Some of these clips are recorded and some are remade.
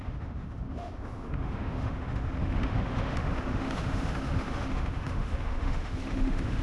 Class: remade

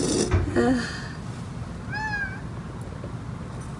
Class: recorded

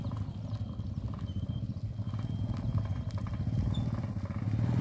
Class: recorded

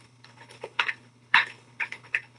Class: remade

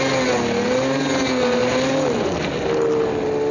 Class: recorded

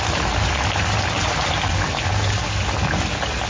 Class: recorded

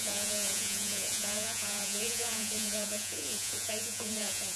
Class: remade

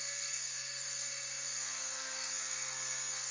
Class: remade